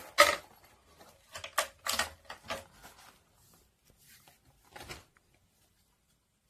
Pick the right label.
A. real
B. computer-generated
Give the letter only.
A